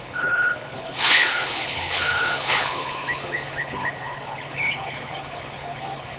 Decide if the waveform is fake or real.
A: fake